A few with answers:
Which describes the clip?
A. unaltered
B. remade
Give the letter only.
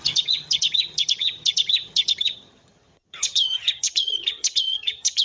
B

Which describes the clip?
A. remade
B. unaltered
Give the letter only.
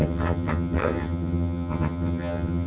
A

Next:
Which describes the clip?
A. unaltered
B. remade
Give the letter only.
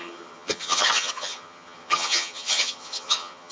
B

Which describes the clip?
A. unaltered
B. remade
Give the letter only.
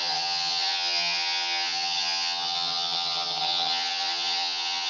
B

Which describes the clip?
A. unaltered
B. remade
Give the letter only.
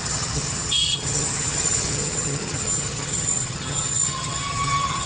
B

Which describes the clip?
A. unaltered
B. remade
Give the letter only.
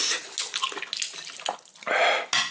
A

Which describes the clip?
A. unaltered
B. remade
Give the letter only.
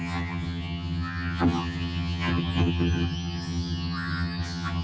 B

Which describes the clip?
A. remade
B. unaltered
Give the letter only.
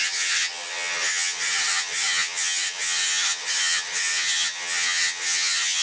A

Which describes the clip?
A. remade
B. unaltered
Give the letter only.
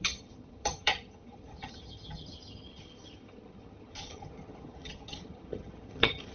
A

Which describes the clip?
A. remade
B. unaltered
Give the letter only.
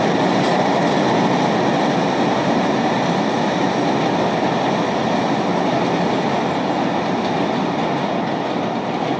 B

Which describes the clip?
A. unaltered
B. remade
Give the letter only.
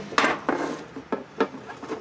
A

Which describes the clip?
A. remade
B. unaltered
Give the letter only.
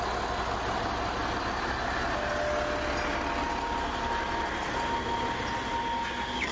B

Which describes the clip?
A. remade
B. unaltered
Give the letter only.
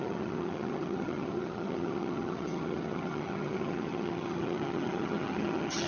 A